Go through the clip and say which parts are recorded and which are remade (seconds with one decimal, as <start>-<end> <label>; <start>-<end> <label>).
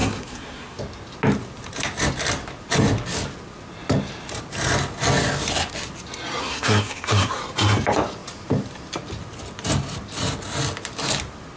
0.0-0.8 remade; 0.8-6.4 recorded; 6.4-7.4 remade; 7.4-11.6 recorded